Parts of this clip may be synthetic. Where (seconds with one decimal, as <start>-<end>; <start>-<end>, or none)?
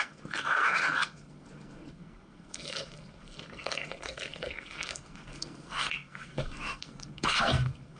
0.0-8.0